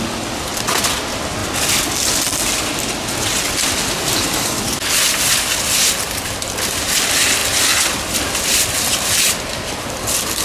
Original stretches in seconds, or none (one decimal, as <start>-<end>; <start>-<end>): 0.0-10.4